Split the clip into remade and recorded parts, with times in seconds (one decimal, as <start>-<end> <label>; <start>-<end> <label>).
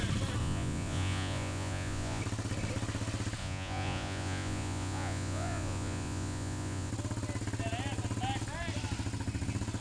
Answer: 0.0-0.4 recorded; 0.4-2.2 remade; 2.2-3.4 recorded; 3.4-6.9 remade; 6.9-9.8 recorded